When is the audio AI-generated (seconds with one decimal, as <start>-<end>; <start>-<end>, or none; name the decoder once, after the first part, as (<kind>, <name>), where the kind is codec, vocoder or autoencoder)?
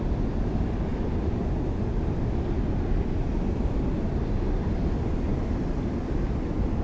5.3-6.8 (vocoder, BigVGAN v2)